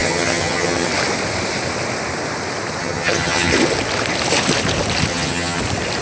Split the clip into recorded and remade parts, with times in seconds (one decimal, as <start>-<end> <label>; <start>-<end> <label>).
0.0-0.9 remade; 0.9-2.8 recorded; 2.8-3.5 remade; 3.5-5.1 recorded; 5.1-5.6 remade; 5.6-6.0 recorded